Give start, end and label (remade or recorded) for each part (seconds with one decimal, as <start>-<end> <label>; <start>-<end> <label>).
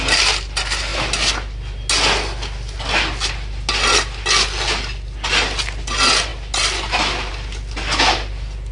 0.0-8.7 recorded